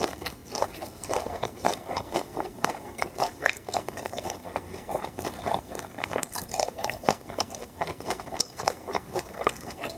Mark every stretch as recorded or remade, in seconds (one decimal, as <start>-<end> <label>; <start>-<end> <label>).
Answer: 0.0-10.0 remade